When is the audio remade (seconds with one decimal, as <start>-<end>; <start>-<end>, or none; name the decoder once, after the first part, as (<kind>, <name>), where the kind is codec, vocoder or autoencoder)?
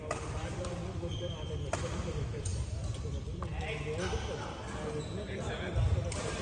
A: 0.0-2.5 (vocoder, BigVGAN v2); 3.0-3.5; 5.0-6.4